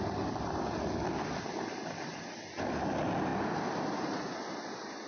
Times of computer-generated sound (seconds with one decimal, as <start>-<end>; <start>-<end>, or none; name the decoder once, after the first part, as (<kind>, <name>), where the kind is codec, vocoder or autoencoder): none